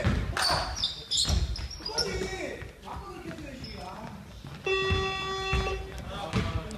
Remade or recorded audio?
recorded